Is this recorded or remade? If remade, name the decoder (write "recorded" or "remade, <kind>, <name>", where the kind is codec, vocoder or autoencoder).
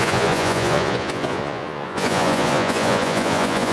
remade, vocoder, Vocos